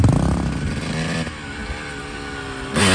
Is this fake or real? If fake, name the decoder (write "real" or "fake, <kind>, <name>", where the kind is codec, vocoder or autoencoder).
real